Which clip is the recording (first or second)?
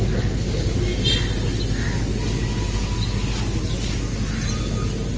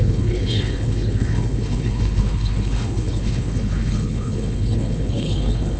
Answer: first